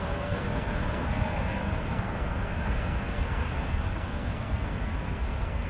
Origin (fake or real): fake